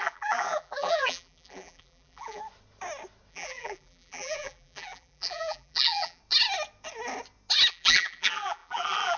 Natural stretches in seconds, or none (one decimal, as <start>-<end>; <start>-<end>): 2.4-3.3; 6.2-7.7